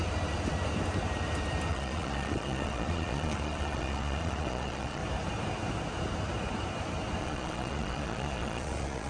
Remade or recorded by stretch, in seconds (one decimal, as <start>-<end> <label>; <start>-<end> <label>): 0.0-1.7 recorded; 1.7-5.0 remade; 5.0-7.2 recorded; 7.2-9.1 remade

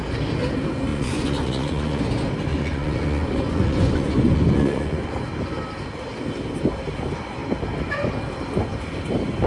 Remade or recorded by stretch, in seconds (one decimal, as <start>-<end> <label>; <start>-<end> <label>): 0.0-0.9 recorded; 0.9-2.0 remade; 2.0-2.5 recorded; 2.5-5.1 remade; 5.1-9.5 recorded